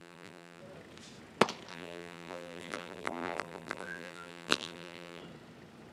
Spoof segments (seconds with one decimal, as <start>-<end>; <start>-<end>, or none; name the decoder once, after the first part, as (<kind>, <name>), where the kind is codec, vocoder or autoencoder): 0.0-0.6 (vocoder, BigVGAN v2); 1.7-5.2